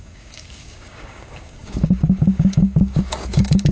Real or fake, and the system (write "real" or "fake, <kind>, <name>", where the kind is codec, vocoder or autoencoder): fake, codec, DAC